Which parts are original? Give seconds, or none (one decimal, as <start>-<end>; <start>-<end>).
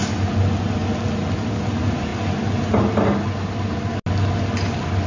0.0-5.1